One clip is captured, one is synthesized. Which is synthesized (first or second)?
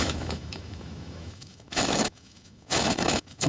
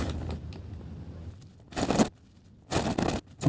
first